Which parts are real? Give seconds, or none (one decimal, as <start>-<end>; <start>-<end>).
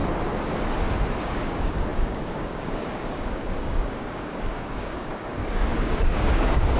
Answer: 0.0-1.2